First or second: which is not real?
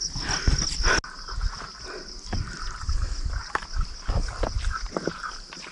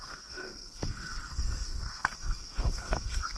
second